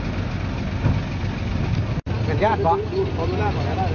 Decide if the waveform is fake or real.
real